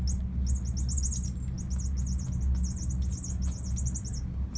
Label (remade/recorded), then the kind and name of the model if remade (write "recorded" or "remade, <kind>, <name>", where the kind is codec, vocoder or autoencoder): recorded